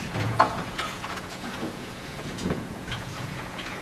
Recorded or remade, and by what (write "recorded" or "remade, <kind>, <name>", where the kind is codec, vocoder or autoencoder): remade, vocoder, Vocos